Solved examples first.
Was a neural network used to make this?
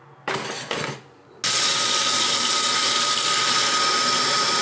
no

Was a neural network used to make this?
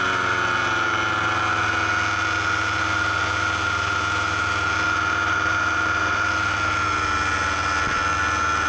no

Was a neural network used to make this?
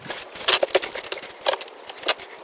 no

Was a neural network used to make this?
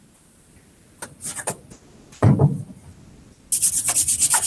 no